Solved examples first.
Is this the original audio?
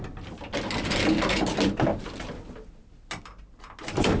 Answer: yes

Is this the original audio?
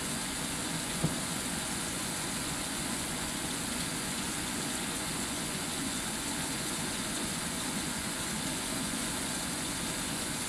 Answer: no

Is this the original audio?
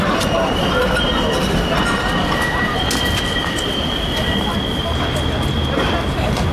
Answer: yes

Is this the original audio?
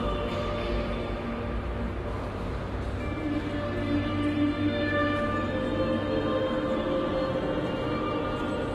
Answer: yes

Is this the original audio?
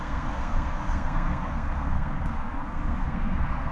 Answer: no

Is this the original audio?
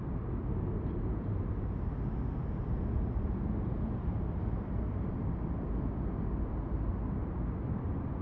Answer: yes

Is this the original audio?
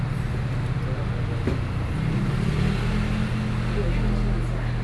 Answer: yes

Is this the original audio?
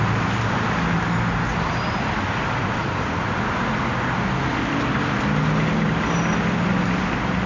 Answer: yes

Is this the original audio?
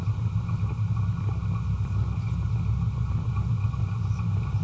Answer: yes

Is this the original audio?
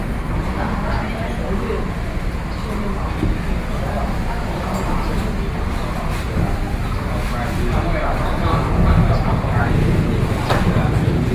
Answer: yes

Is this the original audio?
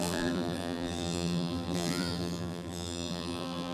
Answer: no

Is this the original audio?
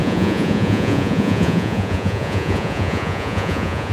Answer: no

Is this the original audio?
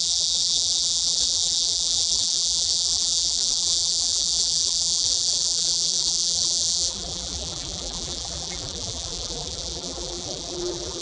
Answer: no